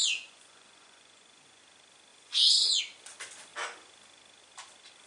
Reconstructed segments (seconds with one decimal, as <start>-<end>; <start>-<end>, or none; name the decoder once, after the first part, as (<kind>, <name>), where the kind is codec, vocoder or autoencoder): 0.0-1.6 (vocoder, Vocos); 2.1-2.8